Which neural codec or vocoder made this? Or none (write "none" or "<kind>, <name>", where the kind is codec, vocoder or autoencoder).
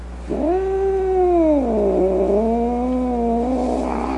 none